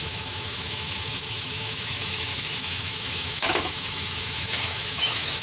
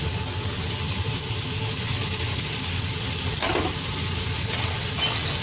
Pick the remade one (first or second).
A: first